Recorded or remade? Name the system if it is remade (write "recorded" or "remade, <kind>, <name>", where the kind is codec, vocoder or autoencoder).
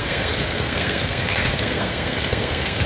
remade, codec, SNAC